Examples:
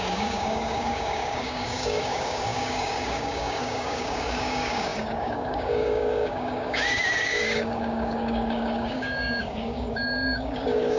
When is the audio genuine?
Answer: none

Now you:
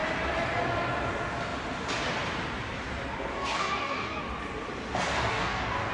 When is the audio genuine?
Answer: 0.0-3.3; 4.2-5.1

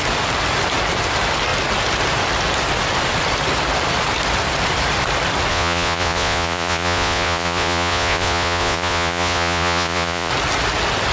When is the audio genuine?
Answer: 0.0-5.5; 10.3-11.1

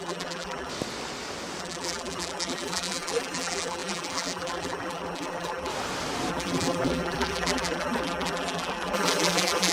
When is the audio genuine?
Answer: 0.7-1.6; 5.7-6.3

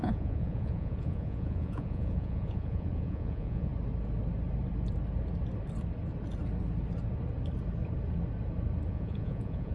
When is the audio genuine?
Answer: 3.7-8.9